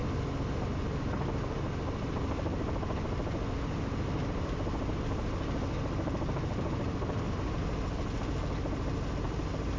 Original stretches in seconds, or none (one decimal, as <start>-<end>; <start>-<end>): 0.0-9.8